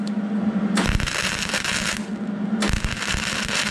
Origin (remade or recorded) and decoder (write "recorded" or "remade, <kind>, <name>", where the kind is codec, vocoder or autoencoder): recorded